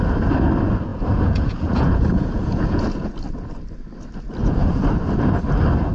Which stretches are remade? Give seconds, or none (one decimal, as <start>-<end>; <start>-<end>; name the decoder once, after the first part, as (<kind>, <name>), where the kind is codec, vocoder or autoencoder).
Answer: 0.9-3.1 (vocoder, Vocos); 4.4-4.9